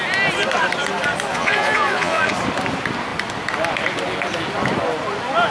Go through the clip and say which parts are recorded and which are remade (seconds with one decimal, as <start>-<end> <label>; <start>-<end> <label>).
0.0-1.3 recorded; 1.3-2.3 remade; 2.3-5.5 recorded